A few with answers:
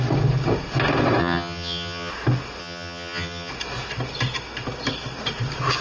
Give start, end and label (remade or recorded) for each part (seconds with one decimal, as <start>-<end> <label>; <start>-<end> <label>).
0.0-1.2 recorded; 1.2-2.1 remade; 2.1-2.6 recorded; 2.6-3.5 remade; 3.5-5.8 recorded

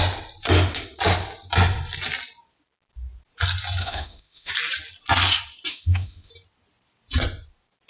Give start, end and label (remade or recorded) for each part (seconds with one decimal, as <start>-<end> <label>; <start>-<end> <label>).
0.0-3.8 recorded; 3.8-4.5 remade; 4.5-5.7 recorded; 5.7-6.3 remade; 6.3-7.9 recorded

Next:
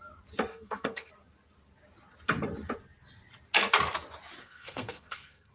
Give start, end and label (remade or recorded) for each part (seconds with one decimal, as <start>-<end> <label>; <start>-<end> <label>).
0.0-0.5 recorded; 0.5-1.1 remade; 1.1-4.4 recorded; 4.4-5.5 remade

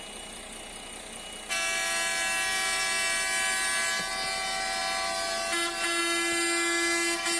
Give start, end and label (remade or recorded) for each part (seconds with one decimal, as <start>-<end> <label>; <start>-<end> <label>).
0.0-7.4 recorded

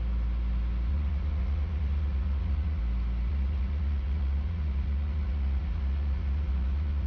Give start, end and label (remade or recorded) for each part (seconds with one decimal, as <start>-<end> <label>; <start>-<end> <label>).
0.0-0.9 recorded; 0.9-2.8 remade; 2.8-3.3 recorded; 3.3-7.1 remade

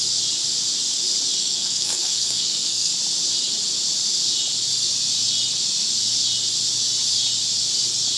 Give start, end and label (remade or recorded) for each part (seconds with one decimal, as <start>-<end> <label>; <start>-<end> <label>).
0.0-1.4 recorded; 1.4-2.9 remade; 2.9-8.2 recorded